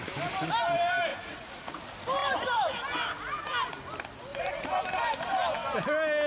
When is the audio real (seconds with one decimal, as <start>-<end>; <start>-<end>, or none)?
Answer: 0.0-1.1; 1.8-4.3; 4.8-6.3

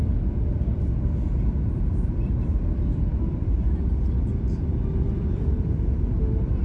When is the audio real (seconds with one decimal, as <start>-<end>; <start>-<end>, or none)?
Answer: 0.0-3.1

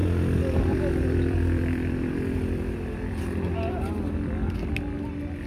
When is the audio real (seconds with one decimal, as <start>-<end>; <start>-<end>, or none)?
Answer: 3.2-5.5

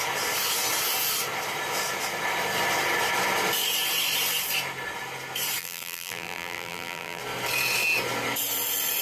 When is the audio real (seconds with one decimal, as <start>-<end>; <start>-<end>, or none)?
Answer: 0.0-5.6; 7.2-9.0

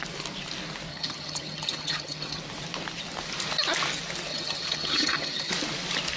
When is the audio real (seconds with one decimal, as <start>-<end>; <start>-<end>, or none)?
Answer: 0.0-0.9; 2.4-4.3; 5.5-6.2